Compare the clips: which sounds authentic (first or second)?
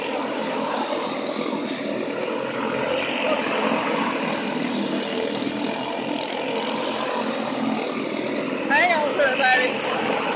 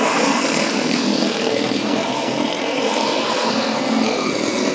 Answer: first